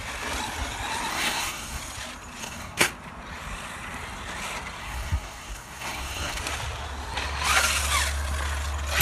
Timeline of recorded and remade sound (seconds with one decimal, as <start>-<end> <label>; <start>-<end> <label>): 0.0-1.1 recorded; 1.1-1.8 remade; 1.8-2.4 recorded; 2.4-2.9 remade; 2.9-4.8 recorded; 4.8-6.4 remade; 6.4-9.0 recorded